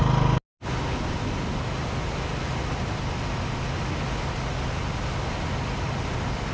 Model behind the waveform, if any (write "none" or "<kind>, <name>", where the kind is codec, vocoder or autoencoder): none